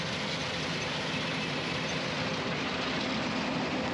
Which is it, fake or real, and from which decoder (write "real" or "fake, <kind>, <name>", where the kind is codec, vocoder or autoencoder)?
real